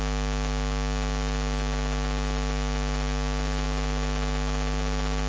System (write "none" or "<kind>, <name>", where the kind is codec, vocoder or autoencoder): none